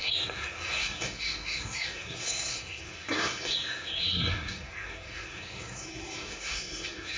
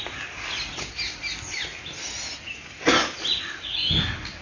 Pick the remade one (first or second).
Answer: first